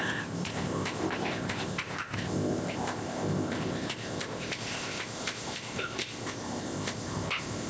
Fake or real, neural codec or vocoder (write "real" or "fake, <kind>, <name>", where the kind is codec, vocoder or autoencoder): fake, codec, ZipCodec